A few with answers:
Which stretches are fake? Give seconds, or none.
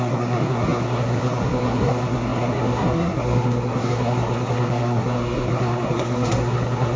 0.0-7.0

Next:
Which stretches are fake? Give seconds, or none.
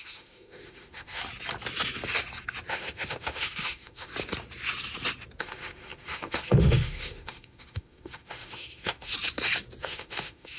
0.0-1.2; 2.7-4.1; 5.4-9.1; 9.8-10.6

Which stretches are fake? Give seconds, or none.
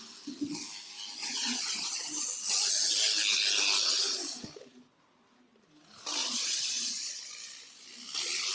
1.2-2.1; 6.2-7.3